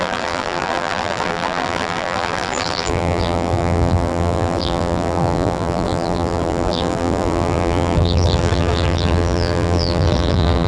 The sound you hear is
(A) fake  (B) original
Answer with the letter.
A